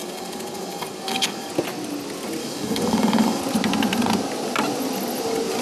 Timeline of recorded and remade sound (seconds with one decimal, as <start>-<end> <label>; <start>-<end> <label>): 0.0-1.5 remade; 1.5-2.4 recorded; 2.4-3.4 remade; 3.4-5.6 recorded